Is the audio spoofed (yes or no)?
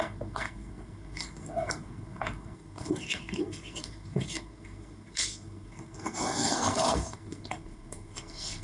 yes